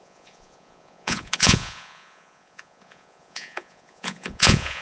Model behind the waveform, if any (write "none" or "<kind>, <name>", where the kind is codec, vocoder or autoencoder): vocoder, Vocos